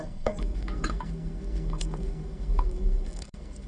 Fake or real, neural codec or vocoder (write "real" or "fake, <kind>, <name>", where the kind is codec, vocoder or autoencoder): fake, codec, SNAC